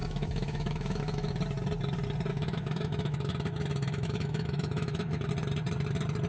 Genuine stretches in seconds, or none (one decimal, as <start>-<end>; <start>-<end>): 1.3-2.3; 5.3-6.3

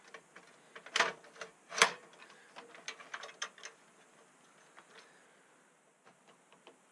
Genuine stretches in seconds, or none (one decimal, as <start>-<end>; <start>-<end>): 0.0-6.9

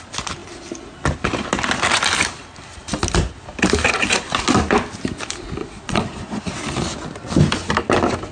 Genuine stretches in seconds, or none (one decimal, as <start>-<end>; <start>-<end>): 0.0-5.6; 6.4-8.3